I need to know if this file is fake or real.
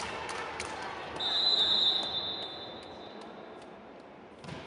real